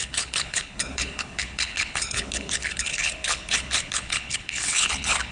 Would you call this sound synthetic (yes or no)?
yes